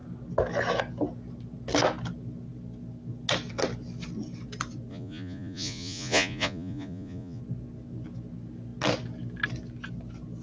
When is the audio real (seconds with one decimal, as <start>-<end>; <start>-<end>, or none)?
0.0-4.9; 7.4-10.4